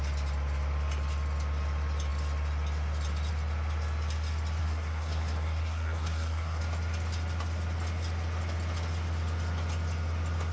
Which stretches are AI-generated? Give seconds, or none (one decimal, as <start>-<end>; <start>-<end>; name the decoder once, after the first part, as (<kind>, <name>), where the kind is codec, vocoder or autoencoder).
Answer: 4.6-6.6 (codec, SNAC)